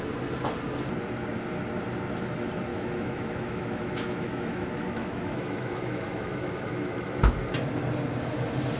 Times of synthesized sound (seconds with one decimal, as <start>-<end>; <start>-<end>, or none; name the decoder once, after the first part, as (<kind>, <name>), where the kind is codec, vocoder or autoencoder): 2.7-7.1 (autoencoder, DAC-VAE)